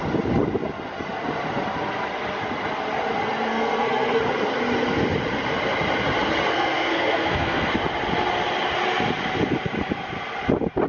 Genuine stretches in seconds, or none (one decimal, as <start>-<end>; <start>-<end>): 0.0-3.5; 4.2-6.5; 7.7-10.9